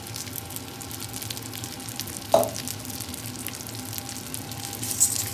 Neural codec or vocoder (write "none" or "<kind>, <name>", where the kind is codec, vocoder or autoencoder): none